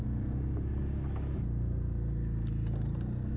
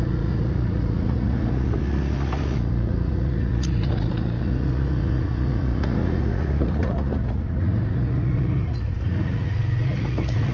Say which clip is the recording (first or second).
first